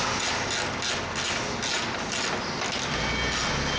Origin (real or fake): real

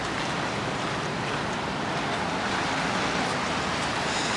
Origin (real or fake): real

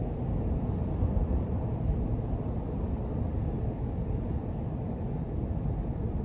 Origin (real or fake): fake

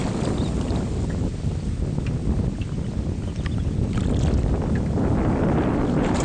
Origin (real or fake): real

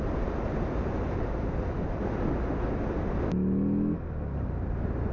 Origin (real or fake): real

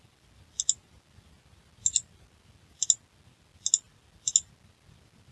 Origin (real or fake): real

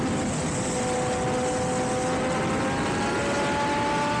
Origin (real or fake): real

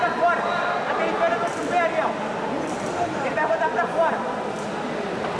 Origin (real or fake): real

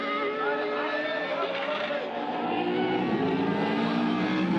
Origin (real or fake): real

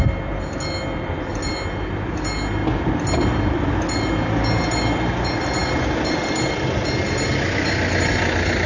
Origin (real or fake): real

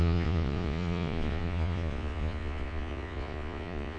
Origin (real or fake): fake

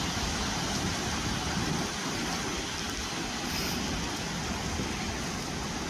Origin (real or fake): real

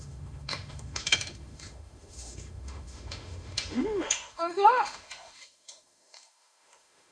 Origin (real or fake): fake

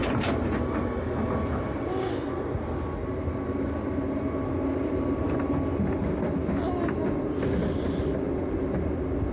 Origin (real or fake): real